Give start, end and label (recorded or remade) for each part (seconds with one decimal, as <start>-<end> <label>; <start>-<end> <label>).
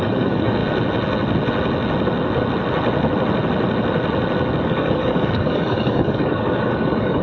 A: 0.0-0.6 remade; 0.6-4.6 recorded; 4.6-7.2 remade